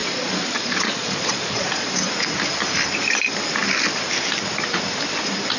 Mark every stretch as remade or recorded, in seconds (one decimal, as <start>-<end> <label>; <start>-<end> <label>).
0.0-2.1 remade; 2.1-5.6 recorded